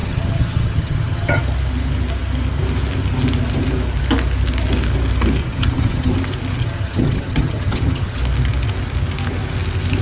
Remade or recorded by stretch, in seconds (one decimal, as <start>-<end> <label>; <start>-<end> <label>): 0.0-1.4 remade; 1.4-5.4 recorded; 5.4-6.1 remade; 6.1-6.6 recorded; 6.6-8.2 remade; 8.2-10.0 recorded